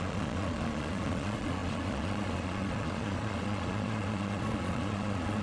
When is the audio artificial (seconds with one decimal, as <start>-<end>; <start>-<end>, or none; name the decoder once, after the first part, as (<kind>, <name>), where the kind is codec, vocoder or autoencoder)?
0.0-5.4 (vocoder, Vocos)